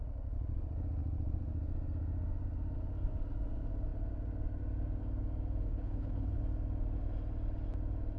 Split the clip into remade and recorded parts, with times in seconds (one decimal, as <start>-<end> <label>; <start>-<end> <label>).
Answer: 0.0-5.7 recorded; 5.7-6.4 remade; 6.4-8.2 recorded